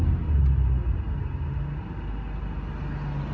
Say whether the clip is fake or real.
real